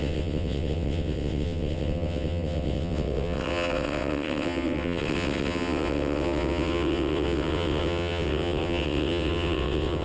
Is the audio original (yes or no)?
no